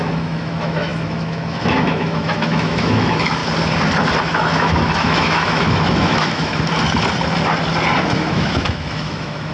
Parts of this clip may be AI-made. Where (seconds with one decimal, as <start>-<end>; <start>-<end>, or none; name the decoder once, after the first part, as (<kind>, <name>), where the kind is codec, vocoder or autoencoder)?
0.0-3.4 (autoencoder, DAC-VAE); 4.2-6.5; 8.0-9.5